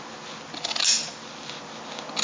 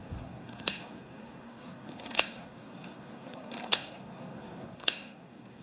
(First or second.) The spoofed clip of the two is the second